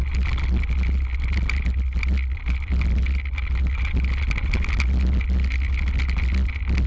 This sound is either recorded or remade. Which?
recorded